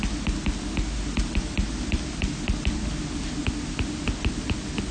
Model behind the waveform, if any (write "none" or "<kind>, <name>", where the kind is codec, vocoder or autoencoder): none